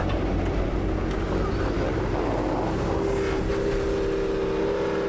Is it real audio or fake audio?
real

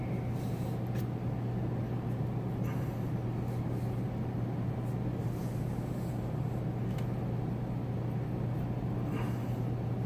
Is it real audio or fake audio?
real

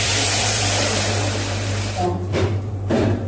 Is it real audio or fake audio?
fake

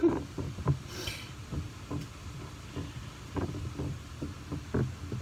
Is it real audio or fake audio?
real